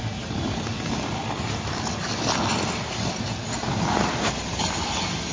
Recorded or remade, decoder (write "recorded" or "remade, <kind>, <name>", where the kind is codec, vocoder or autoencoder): recorded